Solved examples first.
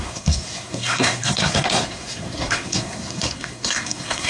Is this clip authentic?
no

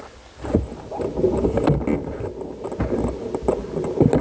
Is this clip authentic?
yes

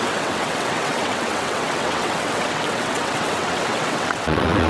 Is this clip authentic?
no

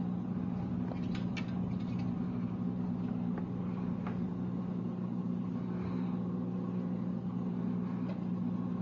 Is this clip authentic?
yes